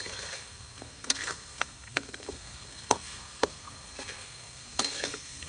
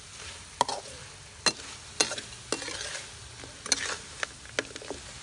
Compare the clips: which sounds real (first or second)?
second